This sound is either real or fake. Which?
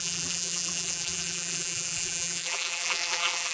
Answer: fake